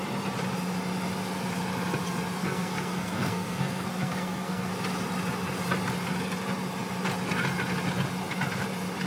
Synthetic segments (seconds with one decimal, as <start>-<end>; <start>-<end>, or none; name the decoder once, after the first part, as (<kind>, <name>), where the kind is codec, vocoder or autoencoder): 2.4-4.7 (codec, SNAC)